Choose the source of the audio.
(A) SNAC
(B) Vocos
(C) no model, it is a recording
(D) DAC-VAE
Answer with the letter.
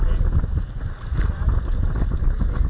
C